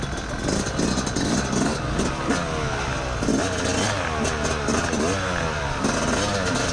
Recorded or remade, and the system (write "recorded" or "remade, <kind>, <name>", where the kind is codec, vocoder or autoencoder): recorded